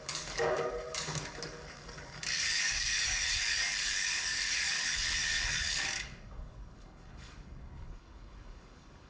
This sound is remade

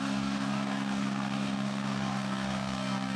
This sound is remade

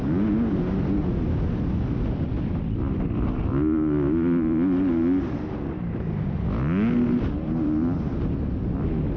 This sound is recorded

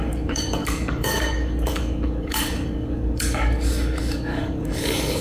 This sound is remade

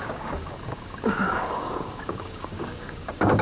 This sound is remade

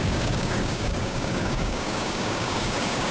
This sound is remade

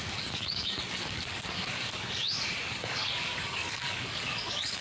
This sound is remade